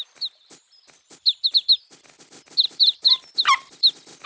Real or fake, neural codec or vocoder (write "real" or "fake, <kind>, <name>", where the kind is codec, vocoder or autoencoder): real